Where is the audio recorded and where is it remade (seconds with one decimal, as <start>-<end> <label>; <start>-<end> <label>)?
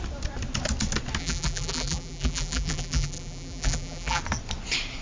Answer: 0.0-1.2 recorded; 1.2-4.2 remade; 4.2-5.0 recorded